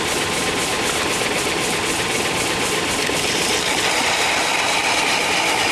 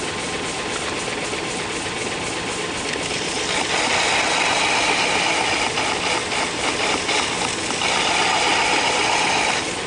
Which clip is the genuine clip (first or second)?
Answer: second